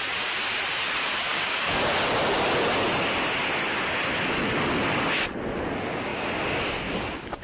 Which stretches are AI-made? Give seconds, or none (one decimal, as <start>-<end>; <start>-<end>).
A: 1.3-1.9